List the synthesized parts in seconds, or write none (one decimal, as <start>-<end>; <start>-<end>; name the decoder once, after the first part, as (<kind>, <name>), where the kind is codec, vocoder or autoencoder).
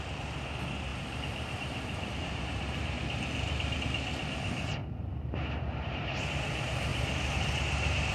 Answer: 0.9-3.8 (vocoder, BigVGAN v2); 4.8-6.3; 6.9-8.1